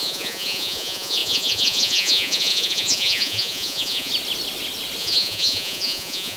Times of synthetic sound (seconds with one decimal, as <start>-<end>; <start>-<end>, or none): 0.0-4.1; 5.0-6.4